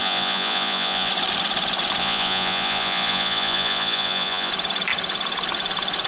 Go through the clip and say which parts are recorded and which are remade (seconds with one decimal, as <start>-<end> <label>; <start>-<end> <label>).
0.0-1.1 remade; 1.1-2.0 recorded; 2.0-4.5 remade; 4.5-6.1 recorded